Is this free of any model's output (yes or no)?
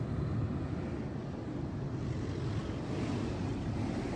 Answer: yes